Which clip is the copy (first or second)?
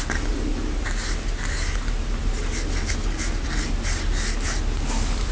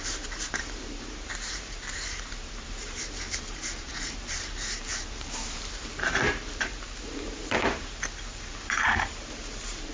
second